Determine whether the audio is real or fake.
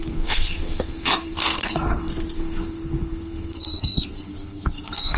fake